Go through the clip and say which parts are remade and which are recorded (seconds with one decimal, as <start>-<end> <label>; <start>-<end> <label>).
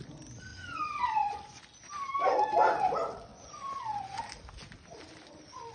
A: 0.0-0.5 recorded; 0.5-1.6 remade; 1.6-3.3 recorded; 3.3-4.2 remade; 4.2-5.7 recorded